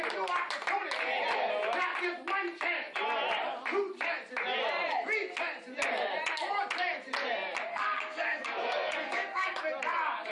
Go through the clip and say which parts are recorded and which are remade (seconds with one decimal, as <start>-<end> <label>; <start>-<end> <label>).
0.0-7.7 recorded; 7.7-9.6 remade; 9.6-10.3 recorded